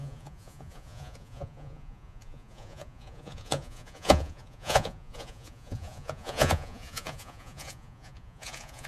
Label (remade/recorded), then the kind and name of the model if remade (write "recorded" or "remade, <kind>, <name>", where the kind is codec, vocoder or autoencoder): remade, vocoder, Vocos